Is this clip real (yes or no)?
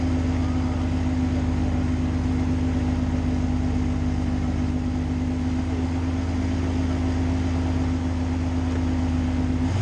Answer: yes